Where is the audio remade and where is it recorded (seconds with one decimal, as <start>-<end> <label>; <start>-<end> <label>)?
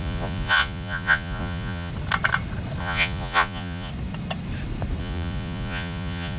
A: 0.0-1.9 remade; 1.9-2.8 recorded; 2.8-3.9 remade; 3.9-5.0 recorded; 5.0-6.4 remade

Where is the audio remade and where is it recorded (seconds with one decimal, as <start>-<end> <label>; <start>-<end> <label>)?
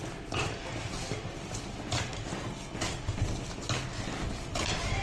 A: 0.0-5.0 recorded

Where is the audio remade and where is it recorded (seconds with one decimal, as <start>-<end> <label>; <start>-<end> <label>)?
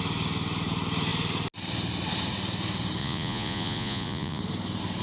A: 0.0-3.0 recorded; 3.0-4.4 remade; 4.4-5.0 recorded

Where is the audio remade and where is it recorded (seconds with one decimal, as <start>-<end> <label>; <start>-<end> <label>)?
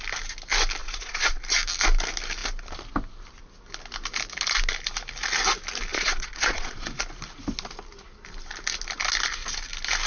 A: 0.0-0.8 recorded; 0.8-1.4 remade; 1.4-5.9 recorded; 5.9-7.0 remade; 7.0-10.1 recorded